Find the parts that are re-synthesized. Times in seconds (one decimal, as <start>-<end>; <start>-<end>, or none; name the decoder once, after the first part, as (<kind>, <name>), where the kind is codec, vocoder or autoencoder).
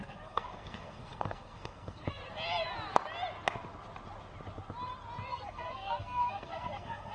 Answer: 0.0-2.2 (codec, SNAC); 5.3-7.1